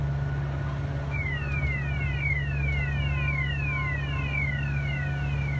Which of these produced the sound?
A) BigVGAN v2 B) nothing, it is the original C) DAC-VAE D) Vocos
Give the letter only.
B